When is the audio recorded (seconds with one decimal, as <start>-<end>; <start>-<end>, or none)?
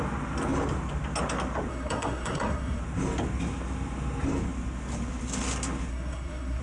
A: 0.0-1.7; 2.8-5.9